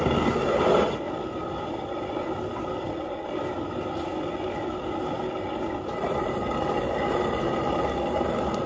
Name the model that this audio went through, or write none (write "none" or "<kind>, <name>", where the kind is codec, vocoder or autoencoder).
none